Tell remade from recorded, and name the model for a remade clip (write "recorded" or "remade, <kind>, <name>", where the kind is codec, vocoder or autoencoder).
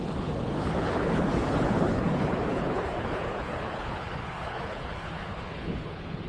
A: remade, codec, HILCodec